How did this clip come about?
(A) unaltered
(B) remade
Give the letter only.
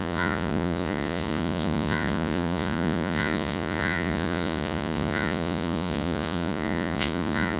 B